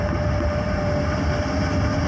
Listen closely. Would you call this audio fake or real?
real